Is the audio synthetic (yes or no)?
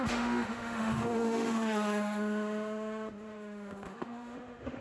yes